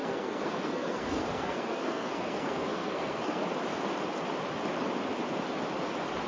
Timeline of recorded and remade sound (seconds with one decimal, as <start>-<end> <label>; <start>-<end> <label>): 0.0-3.4 remade; 3.4-6.3 recorded